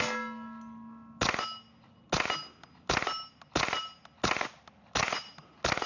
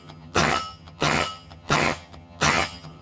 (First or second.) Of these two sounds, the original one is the first